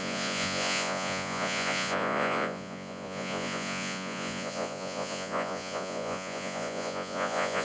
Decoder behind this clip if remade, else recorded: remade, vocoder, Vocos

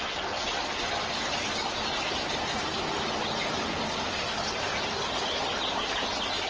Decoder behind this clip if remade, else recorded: recorded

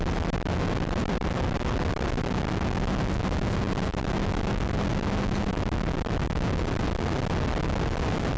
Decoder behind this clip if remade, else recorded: recorded